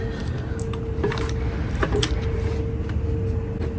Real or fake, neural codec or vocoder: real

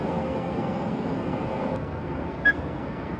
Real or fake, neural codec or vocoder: fake, codec, SNAC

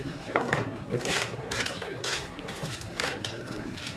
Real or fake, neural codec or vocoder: fake, codec, SNAC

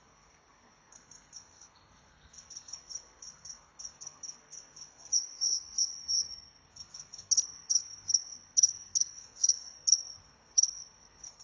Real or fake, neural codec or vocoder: fake, codec, SNAC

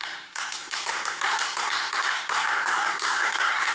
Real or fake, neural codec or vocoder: fake, codec, SNAC